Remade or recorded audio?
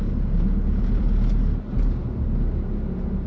recorded